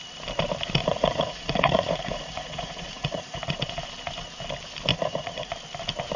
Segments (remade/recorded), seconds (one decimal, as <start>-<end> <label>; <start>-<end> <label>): 0.0-0.8 recorded; 0.8-3.4 remade; 3.4-4.9 recorded; 4.9-5.5 remade; 5.5-6.2 recorded